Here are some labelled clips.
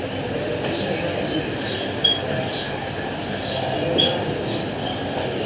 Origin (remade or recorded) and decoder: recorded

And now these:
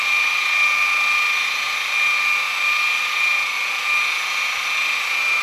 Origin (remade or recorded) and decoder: recorded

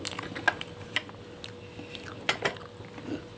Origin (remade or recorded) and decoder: recorded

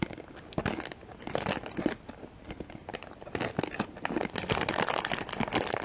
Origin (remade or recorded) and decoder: recorded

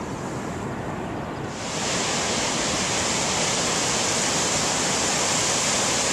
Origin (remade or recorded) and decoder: recorded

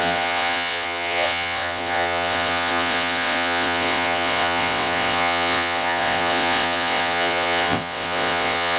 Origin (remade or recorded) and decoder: remade, vocoder, WaveNeXt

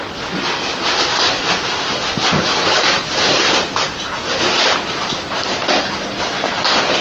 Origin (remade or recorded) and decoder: recorded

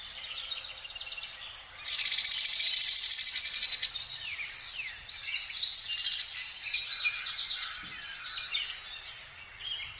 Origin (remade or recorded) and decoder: recorded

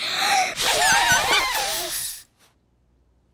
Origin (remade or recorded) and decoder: recorded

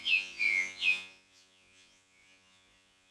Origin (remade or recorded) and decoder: remade, vocoder, Vocos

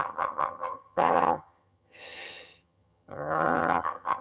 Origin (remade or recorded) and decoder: remade, vocoder, HiFi-GAN